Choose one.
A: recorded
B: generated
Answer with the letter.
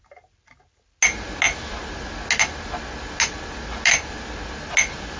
A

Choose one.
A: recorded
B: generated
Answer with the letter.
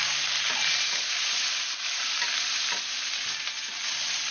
A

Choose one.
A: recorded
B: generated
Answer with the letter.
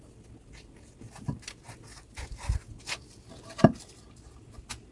A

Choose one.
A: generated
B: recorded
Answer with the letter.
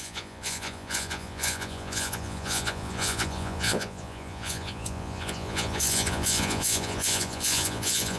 A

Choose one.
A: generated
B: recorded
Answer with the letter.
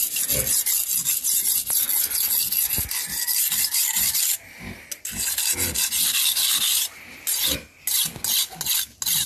B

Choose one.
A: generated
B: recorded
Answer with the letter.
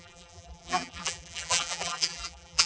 A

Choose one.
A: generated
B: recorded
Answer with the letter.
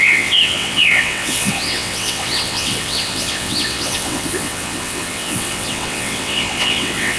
A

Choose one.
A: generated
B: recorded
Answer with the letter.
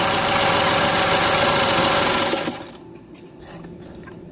B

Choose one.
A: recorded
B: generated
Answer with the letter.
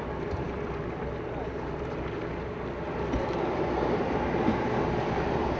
A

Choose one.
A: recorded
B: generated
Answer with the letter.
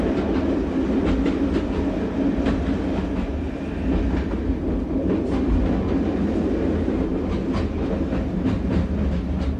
A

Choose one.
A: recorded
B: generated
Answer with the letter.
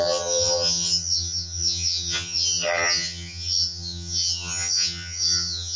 B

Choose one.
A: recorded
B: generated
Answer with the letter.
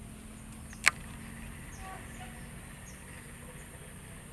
A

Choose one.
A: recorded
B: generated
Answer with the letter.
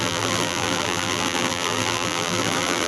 B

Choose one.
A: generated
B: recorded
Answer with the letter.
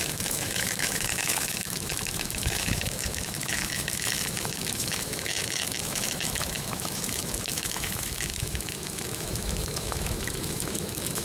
A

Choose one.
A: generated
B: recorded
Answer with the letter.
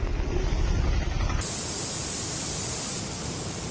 B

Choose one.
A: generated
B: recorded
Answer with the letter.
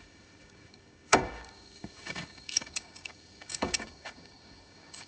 A